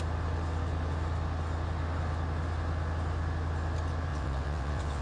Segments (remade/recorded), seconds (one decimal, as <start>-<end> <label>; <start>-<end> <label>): 0.0-4.1 recorded; 4.1-5.0 remade